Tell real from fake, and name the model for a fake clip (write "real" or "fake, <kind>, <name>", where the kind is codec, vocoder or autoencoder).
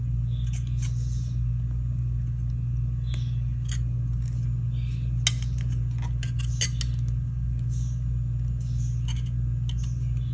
real